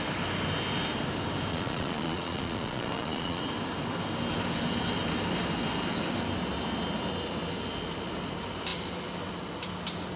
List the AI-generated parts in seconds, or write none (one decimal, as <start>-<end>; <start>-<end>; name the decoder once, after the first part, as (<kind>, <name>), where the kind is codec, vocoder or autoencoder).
1.5-3.4 (vocoder, Vocos)